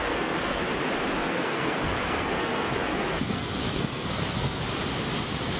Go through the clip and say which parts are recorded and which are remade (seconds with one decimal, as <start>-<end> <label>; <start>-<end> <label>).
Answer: 0.0-0.6 remade; 0.6-1.2 recorded; 1.2-4.6 remade; 4.6-5.6 recorded